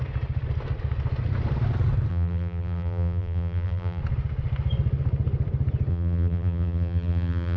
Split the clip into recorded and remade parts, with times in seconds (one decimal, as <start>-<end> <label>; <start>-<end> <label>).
0.0-2.1 recorded; 2.1-4.0 remade; 4.0-5.9 recorded; 5.9-7.6 remade